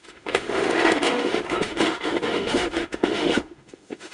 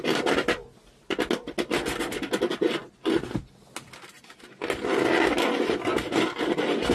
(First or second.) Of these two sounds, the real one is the second